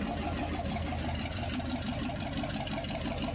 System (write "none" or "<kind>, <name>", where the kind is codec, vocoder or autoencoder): none